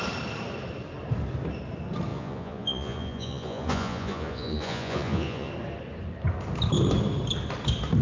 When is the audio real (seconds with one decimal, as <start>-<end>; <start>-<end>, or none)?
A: 0.0-2.1; 5.5-8.0